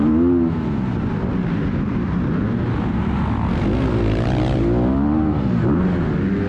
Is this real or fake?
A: real